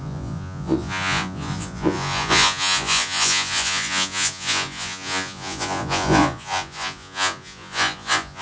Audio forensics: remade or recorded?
remade